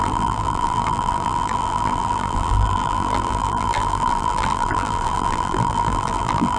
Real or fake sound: fake